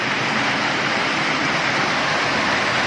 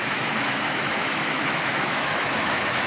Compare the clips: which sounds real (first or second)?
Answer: first